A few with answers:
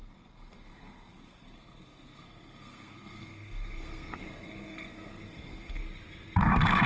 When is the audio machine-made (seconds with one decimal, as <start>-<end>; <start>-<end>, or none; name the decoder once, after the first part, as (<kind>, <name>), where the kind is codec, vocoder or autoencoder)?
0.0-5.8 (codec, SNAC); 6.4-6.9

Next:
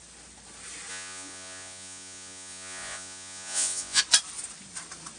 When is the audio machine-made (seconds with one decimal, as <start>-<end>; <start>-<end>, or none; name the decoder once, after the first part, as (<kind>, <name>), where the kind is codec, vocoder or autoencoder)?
0.9-4.0 (vocoder, Vocos)

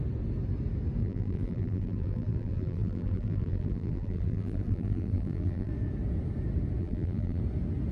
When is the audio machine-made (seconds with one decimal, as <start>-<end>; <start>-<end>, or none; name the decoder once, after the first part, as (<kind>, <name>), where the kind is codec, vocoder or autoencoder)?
1.0-5.7 (vocoder, BigVGAN v2); 6.8-7.4